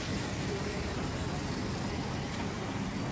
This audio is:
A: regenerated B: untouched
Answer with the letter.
B